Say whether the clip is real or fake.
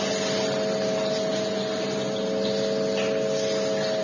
real